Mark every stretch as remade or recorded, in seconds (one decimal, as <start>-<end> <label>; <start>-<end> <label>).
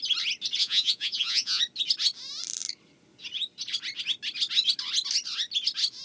0.0-0.6 recorded; 0.6-1.6 remade; 1.6-6.0 recorded